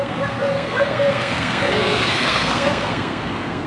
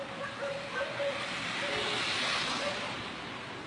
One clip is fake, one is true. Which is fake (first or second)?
first